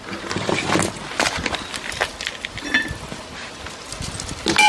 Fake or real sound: real